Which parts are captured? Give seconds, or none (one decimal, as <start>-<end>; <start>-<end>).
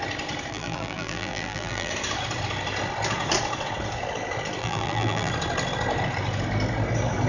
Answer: 0.0-0.5; 1.9-4.6; 5.3-7.3